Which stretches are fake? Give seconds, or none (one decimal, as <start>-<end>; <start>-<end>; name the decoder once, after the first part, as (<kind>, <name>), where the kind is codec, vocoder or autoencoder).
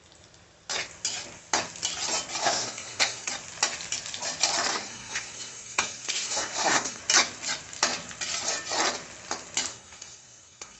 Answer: 2.4-3.3 (codec, SNAC); 4.7-7.0; 9.7-10.8